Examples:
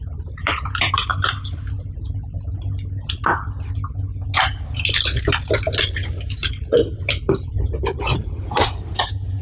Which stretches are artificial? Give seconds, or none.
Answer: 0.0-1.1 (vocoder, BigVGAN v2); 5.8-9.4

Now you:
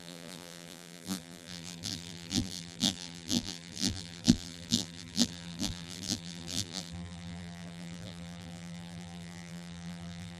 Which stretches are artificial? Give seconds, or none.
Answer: 0.0-10.4 (vocoder, BigVGAN v2)

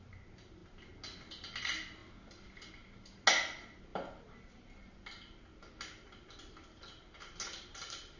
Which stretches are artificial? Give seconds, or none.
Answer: none

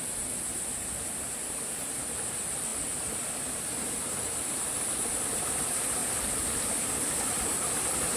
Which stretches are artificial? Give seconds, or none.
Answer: 0.0-6.0 (vocoder, BigVGAN v2); 6.9-8.2

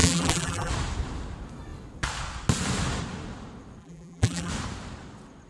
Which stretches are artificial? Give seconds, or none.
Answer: 0.0-0.7 (vocoder, BigVGAN v2); 3.8-4.5